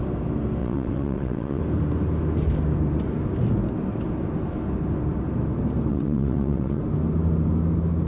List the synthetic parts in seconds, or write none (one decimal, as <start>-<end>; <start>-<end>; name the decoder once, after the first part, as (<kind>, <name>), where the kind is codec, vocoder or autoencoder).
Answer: 0.6-1.6 (vocoder, WaveNeXt); 5.9-6.8